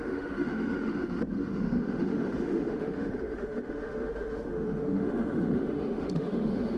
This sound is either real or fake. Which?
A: fake